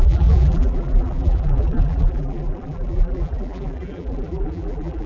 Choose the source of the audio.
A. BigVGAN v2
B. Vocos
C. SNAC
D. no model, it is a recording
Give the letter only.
A